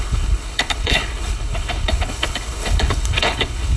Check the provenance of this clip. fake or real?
fake